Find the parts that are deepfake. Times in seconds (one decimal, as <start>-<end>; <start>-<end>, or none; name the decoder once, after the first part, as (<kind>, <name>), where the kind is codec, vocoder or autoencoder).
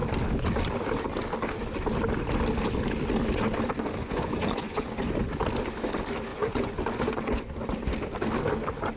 4.0-5.1 (vocoder, Vocos); 6.3-7.4